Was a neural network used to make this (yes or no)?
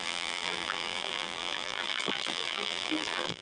yes